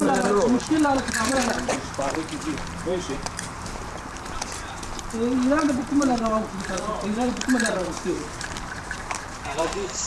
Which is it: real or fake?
fake